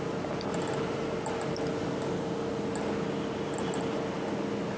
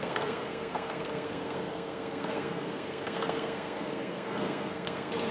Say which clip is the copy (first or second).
second